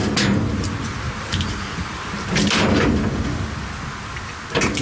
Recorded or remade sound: recorded